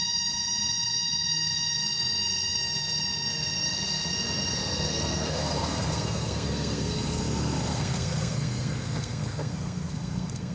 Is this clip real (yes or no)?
no